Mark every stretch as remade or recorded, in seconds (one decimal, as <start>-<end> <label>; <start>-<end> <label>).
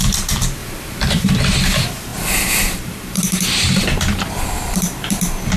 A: 0.0-0.6 remade; 0.6-1.1 recorded; 1.1-5.6 remade